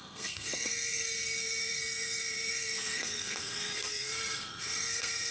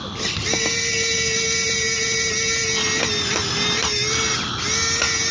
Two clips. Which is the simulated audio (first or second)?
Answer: first